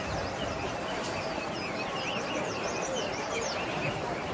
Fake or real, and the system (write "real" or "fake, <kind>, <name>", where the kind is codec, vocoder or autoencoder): fake, vocoder, BigVGAN v2